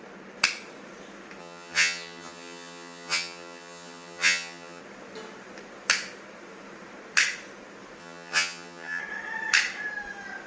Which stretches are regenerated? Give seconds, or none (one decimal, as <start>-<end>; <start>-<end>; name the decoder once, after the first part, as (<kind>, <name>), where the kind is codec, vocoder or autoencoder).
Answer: 1.4-4.8 (vocoder, HiFi-GAN); 8.0-9.0